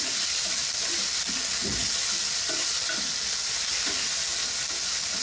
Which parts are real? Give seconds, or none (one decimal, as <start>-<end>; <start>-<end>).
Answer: 0.0-5.2